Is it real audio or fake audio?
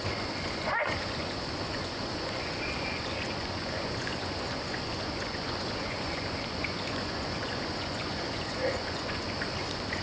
fake